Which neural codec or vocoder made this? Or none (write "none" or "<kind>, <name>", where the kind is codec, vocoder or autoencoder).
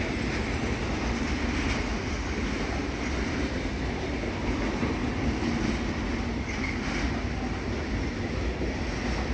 none